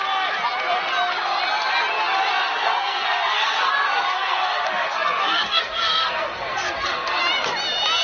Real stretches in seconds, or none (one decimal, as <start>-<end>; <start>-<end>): 0.0-2.6; 7.2-8.0